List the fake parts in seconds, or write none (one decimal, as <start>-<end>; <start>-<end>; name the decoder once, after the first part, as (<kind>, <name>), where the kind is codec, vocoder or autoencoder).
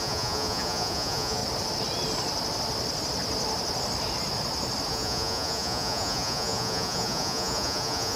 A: 0.0-1.4 (vocoder, Vocos); 4.9-8.2